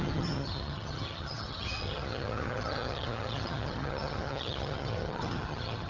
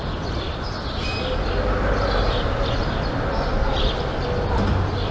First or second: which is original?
second